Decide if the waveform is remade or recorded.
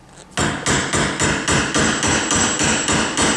recorded